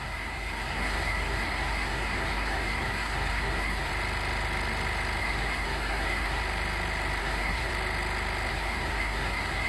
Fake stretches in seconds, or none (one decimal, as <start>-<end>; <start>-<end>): 0.0-3.9; 5.2-6.4; 7.2-7.7; 8.5-9.7